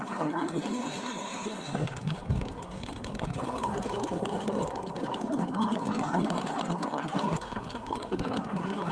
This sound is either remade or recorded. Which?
remade